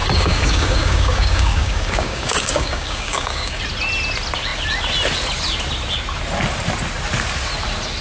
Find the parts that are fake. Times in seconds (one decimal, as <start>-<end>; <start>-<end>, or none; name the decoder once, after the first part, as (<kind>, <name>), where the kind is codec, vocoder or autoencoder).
0.0-3.6 (codec, DAC)